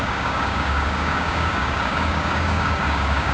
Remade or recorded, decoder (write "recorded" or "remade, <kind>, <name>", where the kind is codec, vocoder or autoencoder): remade, codec, DAC